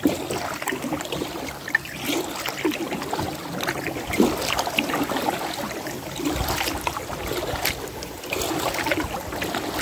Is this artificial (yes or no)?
no